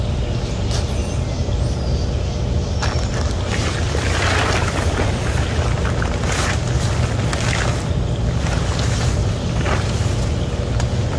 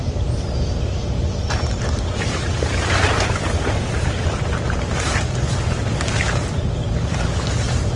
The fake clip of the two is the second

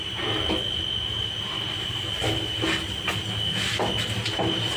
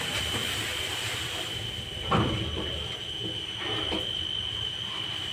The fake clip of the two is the second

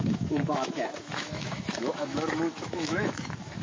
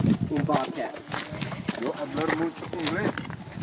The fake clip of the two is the first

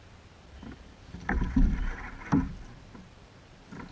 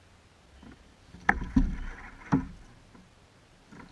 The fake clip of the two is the first